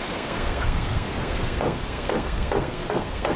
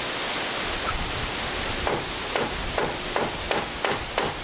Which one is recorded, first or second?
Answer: second